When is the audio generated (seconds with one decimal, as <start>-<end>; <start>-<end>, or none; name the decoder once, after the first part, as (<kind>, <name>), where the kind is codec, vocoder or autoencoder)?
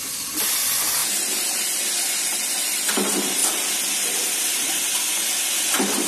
none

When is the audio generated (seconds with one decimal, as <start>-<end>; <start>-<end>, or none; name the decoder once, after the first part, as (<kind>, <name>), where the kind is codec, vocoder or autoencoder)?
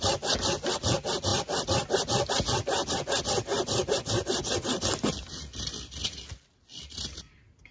none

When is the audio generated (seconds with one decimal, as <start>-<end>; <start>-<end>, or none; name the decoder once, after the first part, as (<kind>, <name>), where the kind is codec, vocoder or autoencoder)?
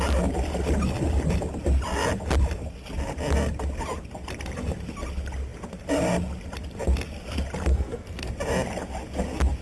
7.7-8.3 (codec, SNAC)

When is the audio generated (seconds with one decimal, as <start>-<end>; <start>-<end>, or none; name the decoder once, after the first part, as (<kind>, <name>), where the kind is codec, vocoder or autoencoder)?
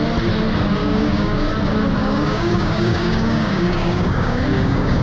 0.8-1.5 (codec, DAC); 2.0-5.0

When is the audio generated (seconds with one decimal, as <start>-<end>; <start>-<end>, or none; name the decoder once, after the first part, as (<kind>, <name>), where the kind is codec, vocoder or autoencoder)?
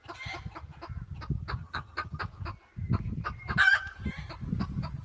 1.6-2.2 (vocoder, HiFi-GAN)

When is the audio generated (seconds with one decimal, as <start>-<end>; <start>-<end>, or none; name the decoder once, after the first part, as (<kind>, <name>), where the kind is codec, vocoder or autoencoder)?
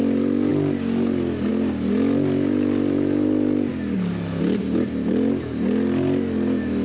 none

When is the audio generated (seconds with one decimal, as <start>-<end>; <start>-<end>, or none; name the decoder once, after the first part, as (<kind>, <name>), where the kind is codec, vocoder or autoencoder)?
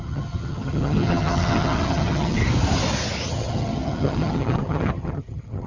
0.0-2.4 (vocoder, HiFi-GAN); 3.3-5.7